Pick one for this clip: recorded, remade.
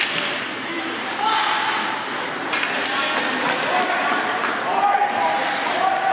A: recorded